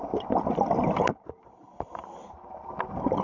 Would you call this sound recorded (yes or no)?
yes